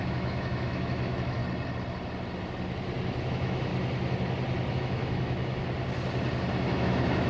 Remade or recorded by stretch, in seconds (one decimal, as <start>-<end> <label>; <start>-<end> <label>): 0.0-1.4 remade; 1.4-3.3 recorded; 3.3-3.7 remade; 3.7-4.7 recorded; 4.7-5.6 remade; 5.6-6.7 recorded; 6.7-7.3 remade